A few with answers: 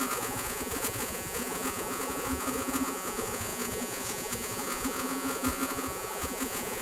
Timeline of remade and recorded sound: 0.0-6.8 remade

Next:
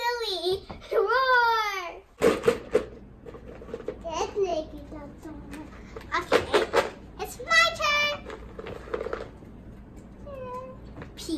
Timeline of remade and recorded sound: 0.0-11.4 recorded

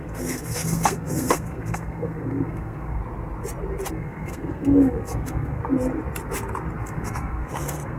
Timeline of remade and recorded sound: 0.0-3.0 remade; 3.0-3.9 recorded; 3.9-5.6 remade; 5.6-6.8 recorded; 6.8-8.0 remade

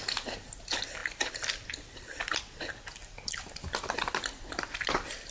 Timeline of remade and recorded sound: 0.0-5.3 recorded